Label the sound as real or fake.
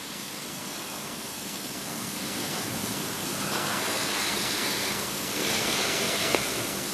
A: fake